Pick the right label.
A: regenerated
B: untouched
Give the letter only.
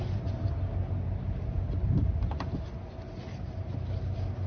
B